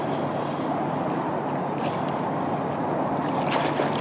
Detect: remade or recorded recorded